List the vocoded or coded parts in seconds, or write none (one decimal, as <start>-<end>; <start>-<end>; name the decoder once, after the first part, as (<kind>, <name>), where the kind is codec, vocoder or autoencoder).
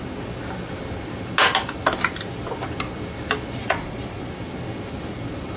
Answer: 3.6-4.3 (vocoder, Vocos)